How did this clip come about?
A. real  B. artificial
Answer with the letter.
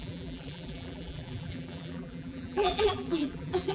B